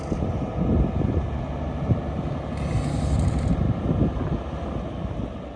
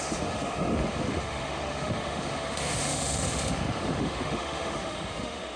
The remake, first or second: second